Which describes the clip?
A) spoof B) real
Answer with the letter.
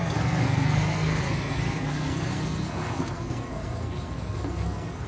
A